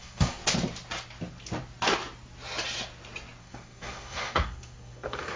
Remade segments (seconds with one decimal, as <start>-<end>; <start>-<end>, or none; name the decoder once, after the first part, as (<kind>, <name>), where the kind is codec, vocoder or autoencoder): 0.0-0.4 (codec, SNAC); 3.4-5.4